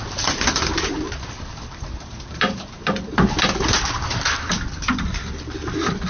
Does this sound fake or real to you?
fake